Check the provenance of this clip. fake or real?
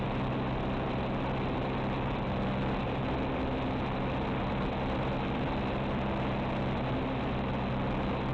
real